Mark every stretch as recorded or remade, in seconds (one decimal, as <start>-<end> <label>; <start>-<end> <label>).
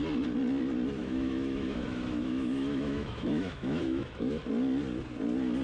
0.0-1.0 recorded; 1.0-4.4 remade; 4.4-5.6 recorded